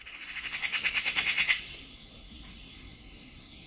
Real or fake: fake